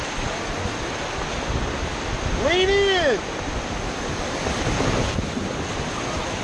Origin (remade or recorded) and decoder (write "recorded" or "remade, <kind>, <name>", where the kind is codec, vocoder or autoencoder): recorded